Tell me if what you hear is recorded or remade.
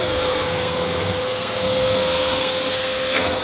remade